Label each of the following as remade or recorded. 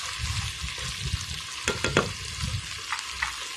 recorded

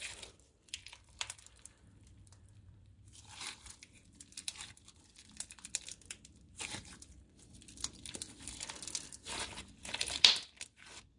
remade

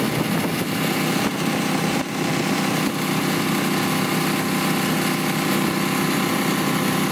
recorded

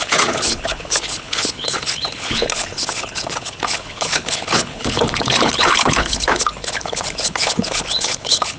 remade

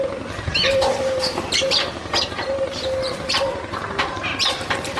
remade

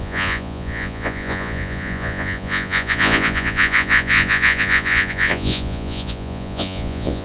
remade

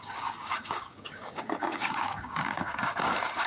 remade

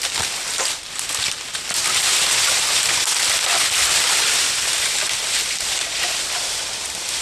remade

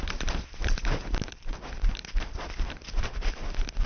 recorded